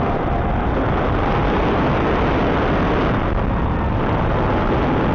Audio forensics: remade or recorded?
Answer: recorded